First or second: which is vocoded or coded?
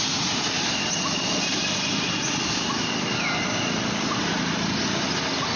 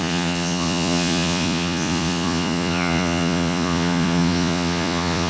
second